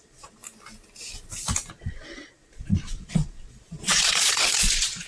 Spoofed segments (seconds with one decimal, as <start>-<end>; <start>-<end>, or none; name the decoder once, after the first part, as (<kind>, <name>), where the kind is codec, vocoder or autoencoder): 0.0-0.4 (vocoder, Vocos); 1.7-5.1